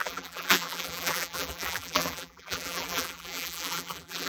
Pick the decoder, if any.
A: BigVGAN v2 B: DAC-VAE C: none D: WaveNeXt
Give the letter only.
A